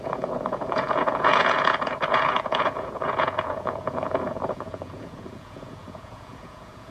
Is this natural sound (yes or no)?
no